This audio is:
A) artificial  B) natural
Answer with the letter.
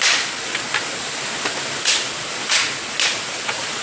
B